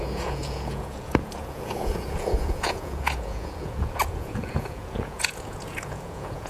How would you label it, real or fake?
fake